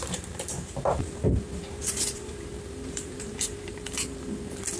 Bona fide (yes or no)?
no